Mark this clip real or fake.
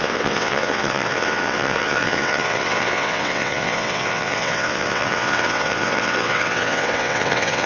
fake